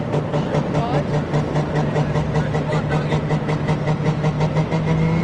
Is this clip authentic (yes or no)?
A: yes